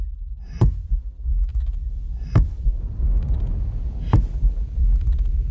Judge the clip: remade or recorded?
recorded